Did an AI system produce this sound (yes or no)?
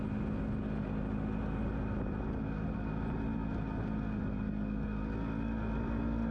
no